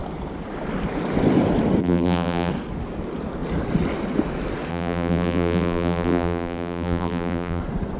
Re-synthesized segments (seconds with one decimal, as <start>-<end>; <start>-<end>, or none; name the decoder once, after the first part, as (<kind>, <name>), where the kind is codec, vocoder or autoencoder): 1.8-2.5 (vocoder, BigVGAN v2); 4.7-7.6